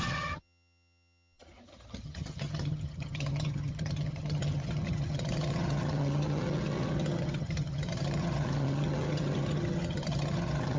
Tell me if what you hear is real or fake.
fake